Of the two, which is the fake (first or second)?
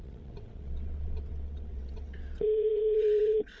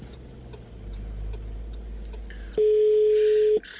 first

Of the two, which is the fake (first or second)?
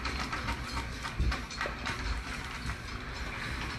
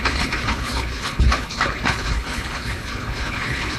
second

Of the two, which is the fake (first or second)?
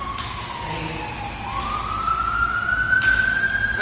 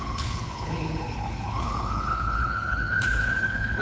second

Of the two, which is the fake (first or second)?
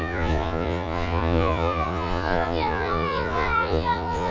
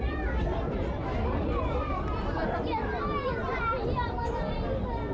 first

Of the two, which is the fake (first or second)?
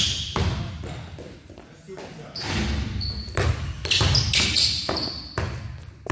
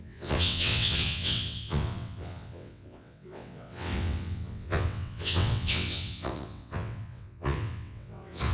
second